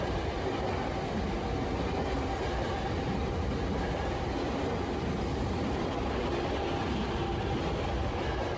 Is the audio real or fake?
real